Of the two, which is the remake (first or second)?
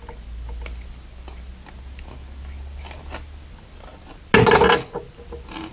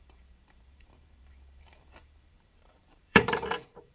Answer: second